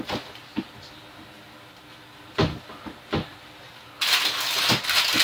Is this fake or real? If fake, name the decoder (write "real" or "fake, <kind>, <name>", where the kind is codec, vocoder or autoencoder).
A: real